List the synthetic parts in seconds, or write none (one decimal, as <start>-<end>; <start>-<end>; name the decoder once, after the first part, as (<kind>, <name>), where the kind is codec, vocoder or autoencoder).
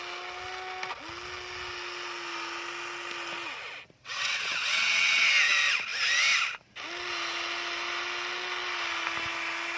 4.0-5.3 (vocoder, WaveNeXt)